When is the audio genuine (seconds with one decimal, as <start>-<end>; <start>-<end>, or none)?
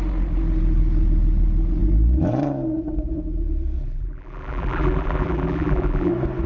0.0-3.8; 6.1-6.5